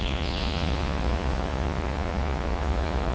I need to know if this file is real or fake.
fake